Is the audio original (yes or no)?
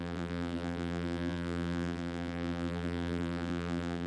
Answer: no